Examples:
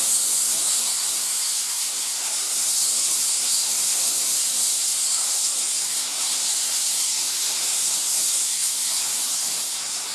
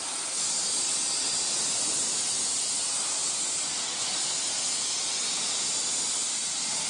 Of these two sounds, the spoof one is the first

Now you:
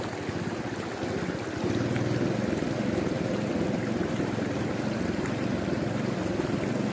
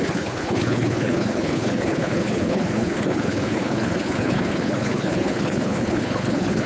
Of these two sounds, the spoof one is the second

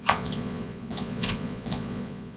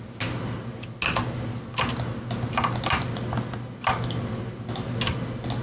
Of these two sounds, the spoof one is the first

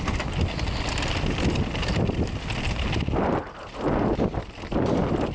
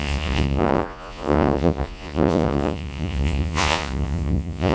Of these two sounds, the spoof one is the second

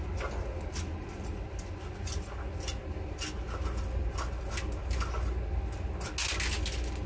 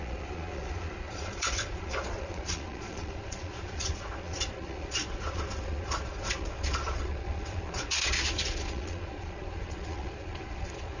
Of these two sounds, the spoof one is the second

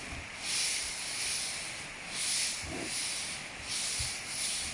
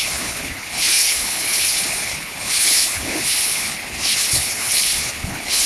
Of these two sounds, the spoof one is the second